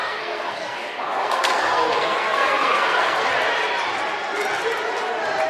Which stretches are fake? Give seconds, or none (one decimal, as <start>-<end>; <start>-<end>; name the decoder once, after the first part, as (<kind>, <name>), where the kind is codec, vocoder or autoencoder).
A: 0.0-3.3 (codec, SNAC)